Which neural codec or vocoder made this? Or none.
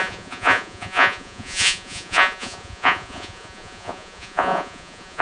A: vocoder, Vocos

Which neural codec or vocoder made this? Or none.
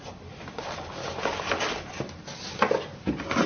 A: none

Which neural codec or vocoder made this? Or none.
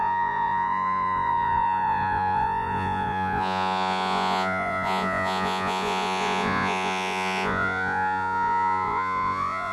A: vocoder, Vocos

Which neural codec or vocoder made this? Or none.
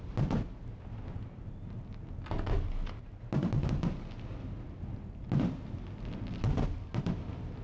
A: none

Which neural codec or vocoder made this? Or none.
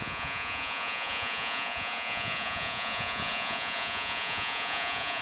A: vocoder, Vocos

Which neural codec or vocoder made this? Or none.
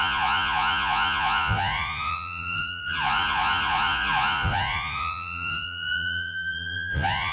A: vocoder, Vocos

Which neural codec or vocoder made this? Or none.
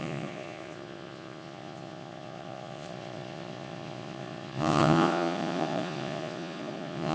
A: vocoder, Vocos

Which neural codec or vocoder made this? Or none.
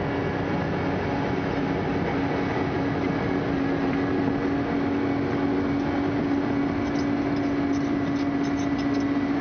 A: none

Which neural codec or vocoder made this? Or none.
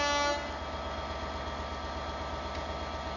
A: none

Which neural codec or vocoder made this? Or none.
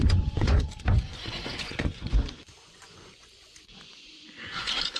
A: vocoder, Vocos